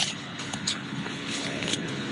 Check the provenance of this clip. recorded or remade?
remade